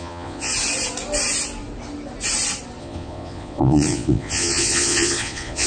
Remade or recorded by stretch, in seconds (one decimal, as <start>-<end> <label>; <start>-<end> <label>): 0.0-0.5 remade; 0.5-2.8 recorded; 2.8-5.7 remade